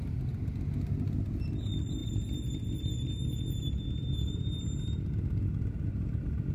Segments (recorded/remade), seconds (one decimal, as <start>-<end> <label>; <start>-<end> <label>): 0.0-6.5 recorded